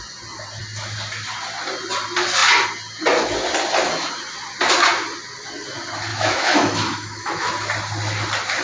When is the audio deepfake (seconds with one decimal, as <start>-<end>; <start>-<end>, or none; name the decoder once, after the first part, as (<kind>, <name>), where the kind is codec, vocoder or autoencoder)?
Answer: 6.1-7.5 (autoencoder, DAC-VAE)